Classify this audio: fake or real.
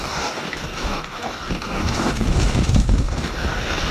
fake